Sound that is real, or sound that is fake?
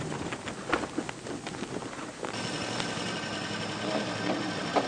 real